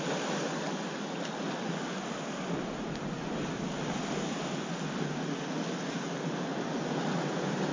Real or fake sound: real